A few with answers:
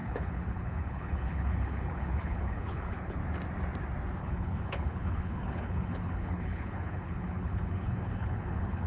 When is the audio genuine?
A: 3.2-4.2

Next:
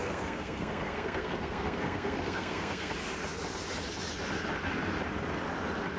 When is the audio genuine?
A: 2.9-6.0

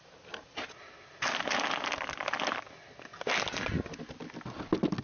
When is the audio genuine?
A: 0.0-5.0

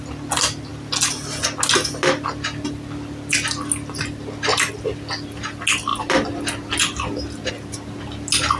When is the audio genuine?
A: 0.0-8.6